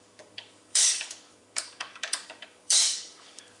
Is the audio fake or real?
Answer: fake